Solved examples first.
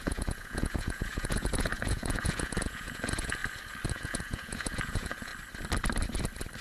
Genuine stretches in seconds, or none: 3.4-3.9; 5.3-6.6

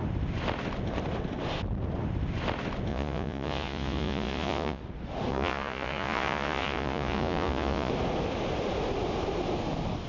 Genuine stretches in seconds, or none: 0.0-2.9; 4.8-5.3; 7.9-10.1

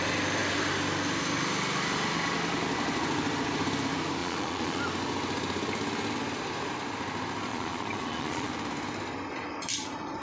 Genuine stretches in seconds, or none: 0.0-4.2; 4.8-7.5; 8.5-10.2

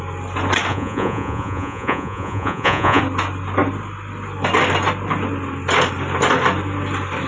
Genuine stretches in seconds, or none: 0.0-0.7; 3.0-7.3

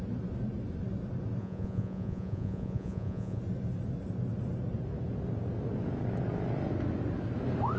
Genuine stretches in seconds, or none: 0.0-1.4; 3.4-7.8